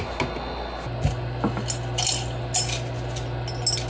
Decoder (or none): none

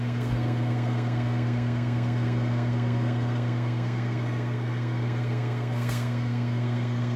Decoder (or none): codec, SNAC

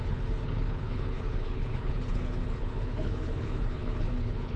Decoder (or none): codec, HILCodec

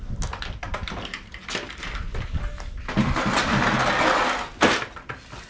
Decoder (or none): none